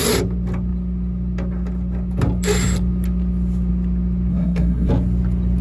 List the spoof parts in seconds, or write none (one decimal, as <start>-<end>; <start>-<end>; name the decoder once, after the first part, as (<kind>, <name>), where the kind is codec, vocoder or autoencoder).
4.3-4.9 (codec, SNAC)